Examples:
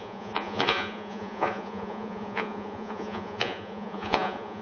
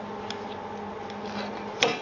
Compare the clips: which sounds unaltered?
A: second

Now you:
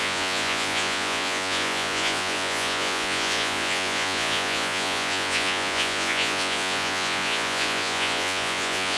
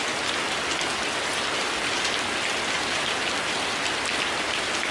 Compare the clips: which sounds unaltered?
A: second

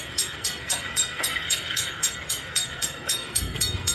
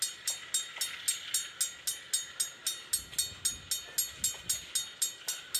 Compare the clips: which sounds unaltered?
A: second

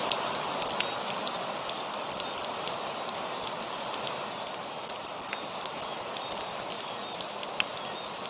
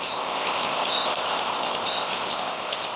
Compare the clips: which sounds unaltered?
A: first